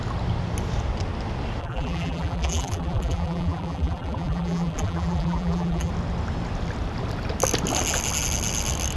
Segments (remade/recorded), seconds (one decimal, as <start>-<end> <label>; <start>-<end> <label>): 0.0-1.6 recorded; 1.6-5.9 remade; 5.9-9.0 recorded